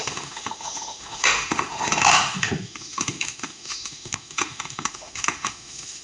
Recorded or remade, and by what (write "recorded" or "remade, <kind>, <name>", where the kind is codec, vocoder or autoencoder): remade, autoencoder, DAC-VAE